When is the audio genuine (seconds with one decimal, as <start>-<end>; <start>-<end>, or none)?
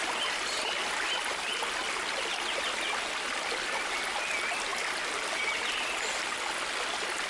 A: 0.0-7.3